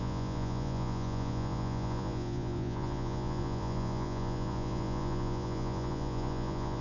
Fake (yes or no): yes